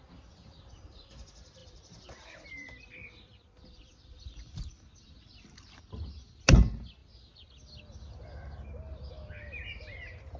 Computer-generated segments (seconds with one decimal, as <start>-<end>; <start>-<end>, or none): 1.6-5.8